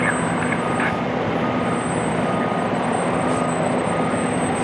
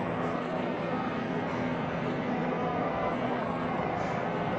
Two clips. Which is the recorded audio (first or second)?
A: first